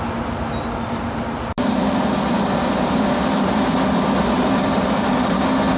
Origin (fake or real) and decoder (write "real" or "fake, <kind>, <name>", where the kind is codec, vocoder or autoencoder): real